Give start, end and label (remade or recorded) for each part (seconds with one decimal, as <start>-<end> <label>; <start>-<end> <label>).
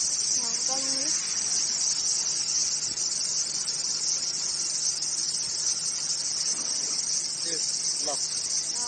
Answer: 0.0-8.9 recorded